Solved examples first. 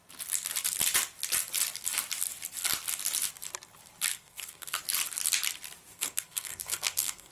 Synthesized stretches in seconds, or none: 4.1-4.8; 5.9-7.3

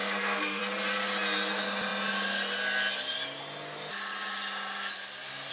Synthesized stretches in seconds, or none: 0.0-0.6